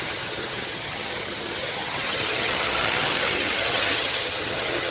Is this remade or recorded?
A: remade